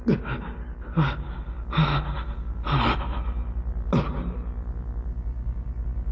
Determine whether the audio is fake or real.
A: real